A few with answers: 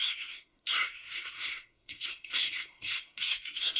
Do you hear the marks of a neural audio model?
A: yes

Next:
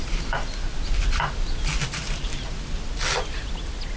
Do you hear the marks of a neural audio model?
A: no